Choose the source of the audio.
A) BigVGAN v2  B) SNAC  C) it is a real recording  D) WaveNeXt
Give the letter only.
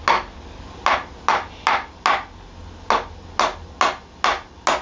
C